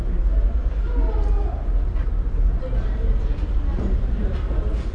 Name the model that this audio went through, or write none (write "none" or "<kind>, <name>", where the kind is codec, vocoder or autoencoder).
none